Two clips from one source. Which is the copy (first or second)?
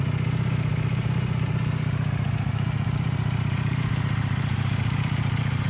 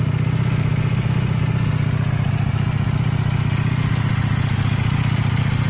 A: first